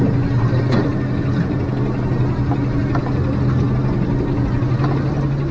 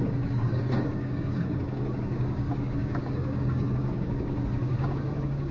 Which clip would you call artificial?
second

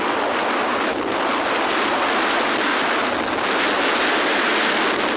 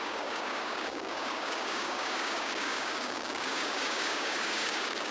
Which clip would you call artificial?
second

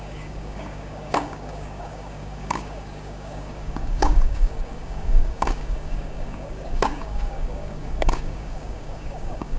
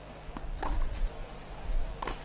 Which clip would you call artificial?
first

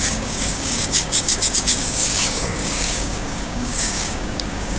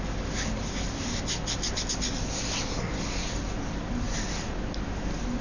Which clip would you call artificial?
first